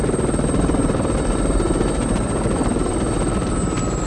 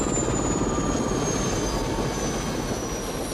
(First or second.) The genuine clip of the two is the second